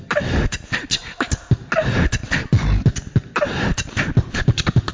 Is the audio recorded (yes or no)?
yes